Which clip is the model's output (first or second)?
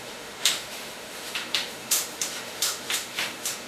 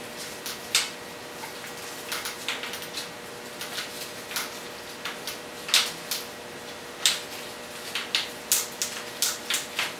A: first